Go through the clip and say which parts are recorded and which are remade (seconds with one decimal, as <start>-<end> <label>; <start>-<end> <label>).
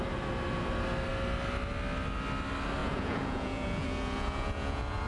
0.0-2.8 recorded; 2.8-5.1 remade